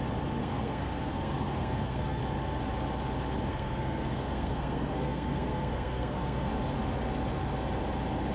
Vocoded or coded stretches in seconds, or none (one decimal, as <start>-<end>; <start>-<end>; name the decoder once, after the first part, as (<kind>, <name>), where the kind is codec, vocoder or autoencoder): 0.4-2.2 (codec, SNAC); 3.5-6.5